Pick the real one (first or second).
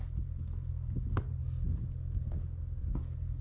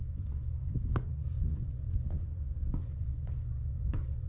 first